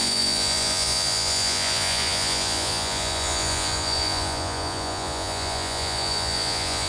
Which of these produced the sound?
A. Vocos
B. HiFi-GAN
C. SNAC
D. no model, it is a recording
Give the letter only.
A